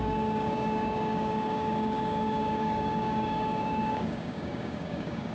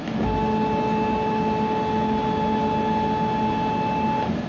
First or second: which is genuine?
second